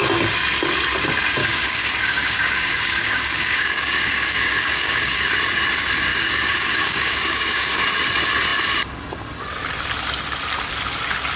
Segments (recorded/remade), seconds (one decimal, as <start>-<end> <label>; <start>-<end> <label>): 0.0-1.4 recorded; 1.4-5.3 remade; 5.3-6.1 recorded; 6.1-7.8 remade; 7.8-11.4 recorded